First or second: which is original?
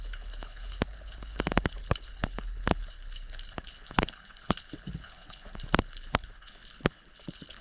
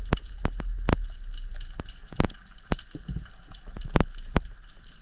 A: second